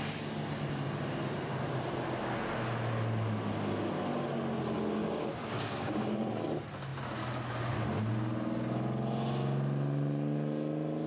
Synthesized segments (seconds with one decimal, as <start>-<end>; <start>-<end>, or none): 5.0-6.3